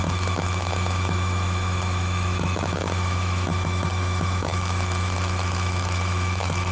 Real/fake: fake